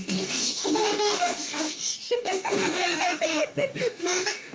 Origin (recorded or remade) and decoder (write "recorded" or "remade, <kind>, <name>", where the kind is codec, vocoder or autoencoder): remade, codec, DAC